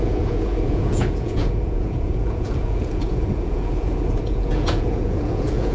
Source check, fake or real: fake